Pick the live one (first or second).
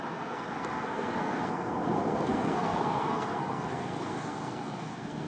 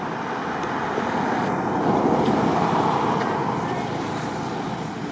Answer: second